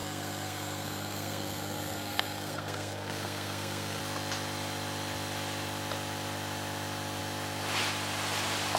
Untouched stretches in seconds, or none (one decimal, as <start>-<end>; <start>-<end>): 4.0-8.8